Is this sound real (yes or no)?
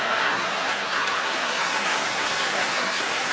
no